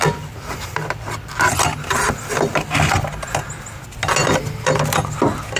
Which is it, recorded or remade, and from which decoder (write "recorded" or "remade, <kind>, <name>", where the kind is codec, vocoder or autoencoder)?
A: recorded